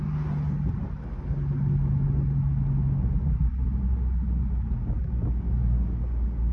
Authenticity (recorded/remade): recorded